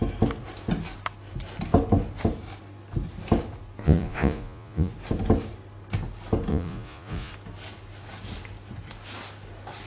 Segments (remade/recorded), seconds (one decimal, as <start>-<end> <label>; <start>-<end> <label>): 0.0-3.8 recorded; 3.8-4.9 remade; 4.9-6.5 recorded; 6.5-7.3 remade; 7.3-9.9 recorded